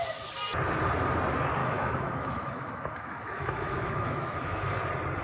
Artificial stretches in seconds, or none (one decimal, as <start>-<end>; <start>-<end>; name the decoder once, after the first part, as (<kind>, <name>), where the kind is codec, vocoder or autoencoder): 1.6-4.7 (autoencoder, DAC-VAE)